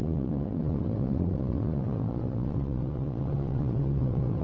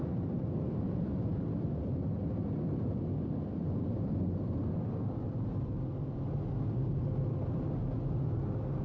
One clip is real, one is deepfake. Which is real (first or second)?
second